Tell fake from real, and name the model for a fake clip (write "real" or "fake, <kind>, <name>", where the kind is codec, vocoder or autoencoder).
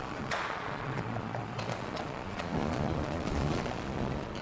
fake, vocoder, Vocos